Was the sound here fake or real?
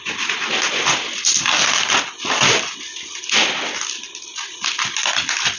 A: real